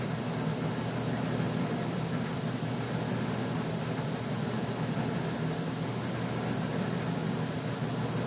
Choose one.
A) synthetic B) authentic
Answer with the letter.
B